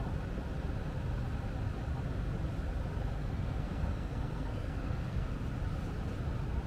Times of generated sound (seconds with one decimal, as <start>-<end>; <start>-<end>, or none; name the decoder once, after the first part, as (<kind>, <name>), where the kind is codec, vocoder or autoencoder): 3.2-5.4 (codec, SNAC)